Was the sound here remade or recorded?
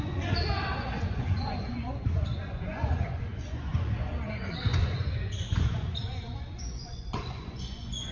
remade